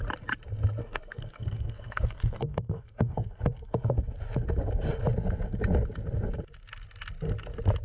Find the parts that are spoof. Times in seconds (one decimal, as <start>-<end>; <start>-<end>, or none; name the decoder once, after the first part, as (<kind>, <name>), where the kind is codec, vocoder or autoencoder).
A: 0.8-4.0 (codec, SNAC)